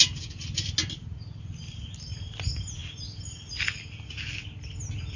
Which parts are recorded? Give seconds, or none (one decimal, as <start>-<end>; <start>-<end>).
0.0-5.2